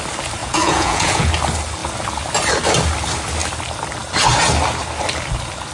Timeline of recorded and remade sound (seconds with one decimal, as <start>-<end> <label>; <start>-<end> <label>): 0.0-0.4 recorded; 0.4-1.3 remade; 1.3-5.7 recorded